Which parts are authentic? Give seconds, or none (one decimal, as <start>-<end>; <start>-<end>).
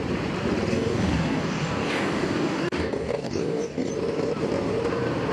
0.0-0.7; 3.9-5.3